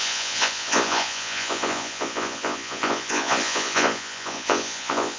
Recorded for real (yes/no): no